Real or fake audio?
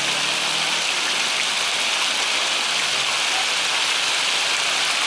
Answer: real